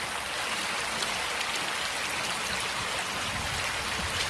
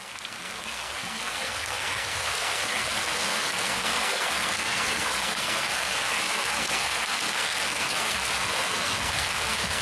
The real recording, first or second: first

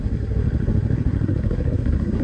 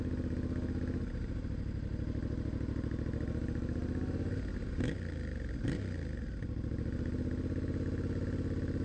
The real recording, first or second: second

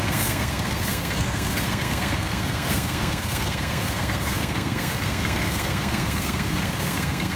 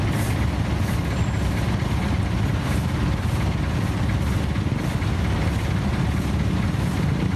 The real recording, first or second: second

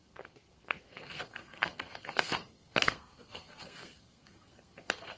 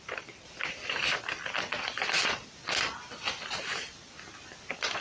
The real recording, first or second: second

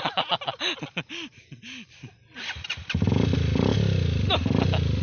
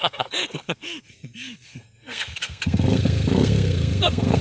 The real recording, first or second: first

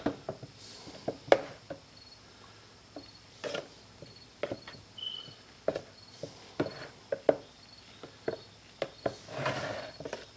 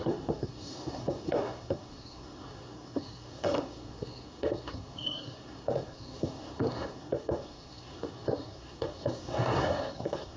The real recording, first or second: first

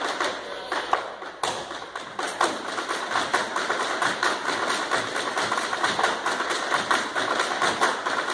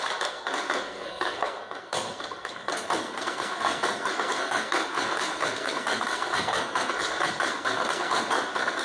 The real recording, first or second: first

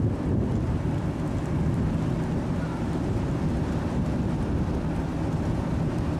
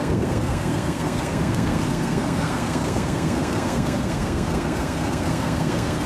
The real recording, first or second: first